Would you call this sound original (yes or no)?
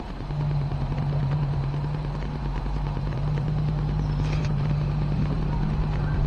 no